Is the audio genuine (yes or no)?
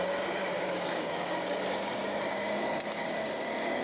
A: no